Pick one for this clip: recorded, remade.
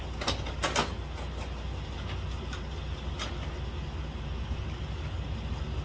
recorded